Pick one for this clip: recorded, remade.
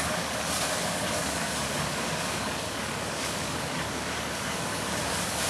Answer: remade